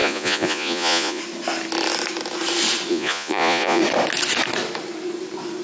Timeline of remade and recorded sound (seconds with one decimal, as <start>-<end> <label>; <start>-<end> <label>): 0.0-1.2 remade; 1.2-2.9 recorded; 2.9-3.8 remade; 3.8-5.6 recorded